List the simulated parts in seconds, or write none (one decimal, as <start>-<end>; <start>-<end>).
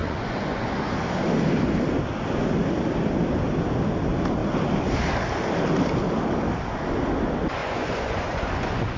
0.0-0.9; 7.6-9.0